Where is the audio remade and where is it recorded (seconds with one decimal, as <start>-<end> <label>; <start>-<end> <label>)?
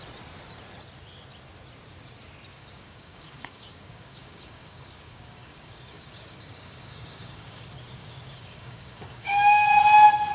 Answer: 0.0-2.5 recorded; 2.5-7.6 remade; 7.6-8.0 recorded; 8.0-10.3 remade